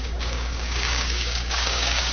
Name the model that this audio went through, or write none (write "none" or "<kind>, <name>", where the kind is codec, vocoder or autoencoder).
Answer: codec, DAC